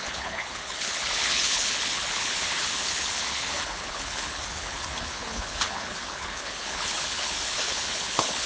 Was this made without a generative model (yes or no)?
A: no